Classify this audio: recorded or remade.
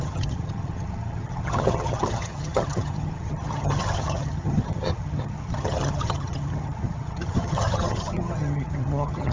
remade